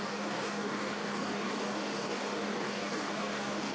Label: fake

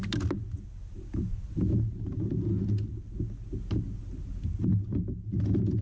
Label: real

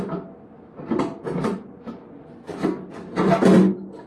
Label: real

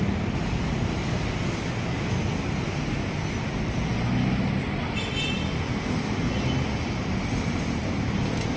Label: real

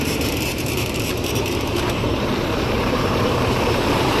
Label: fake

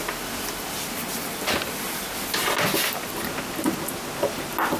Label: real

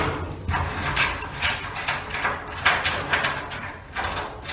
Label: real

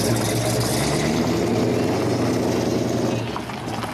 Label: real